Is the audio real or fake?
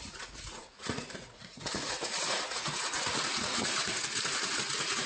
fake